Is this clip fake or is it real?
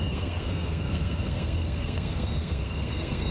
fake